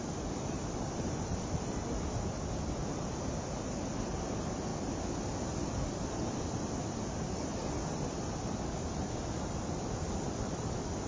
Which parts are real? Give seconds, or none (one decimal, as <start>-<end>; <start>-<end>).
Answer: 1.8-3.3; 4.7-5.2